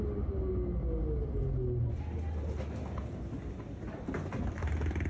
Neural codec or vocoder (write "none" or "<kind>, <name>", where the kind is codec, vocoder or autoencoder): none